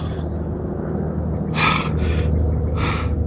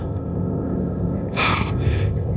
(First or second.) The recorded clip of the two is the first